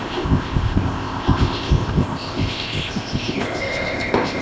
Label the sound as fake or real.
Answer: fake